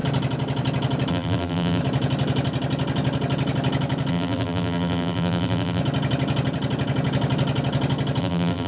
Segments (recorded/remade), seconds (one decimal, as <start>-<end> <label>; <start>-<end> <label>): 0.0-1.1 recorded; 1.1-1.8 remade; 1.8-4.1 recorded; 4.1-5.8 remade; 5.8-8.2 recorded; 8.2-8.7 remade